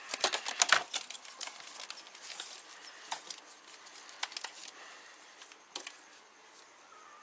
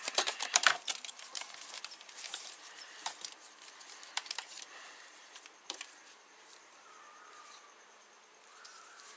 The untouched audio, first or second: first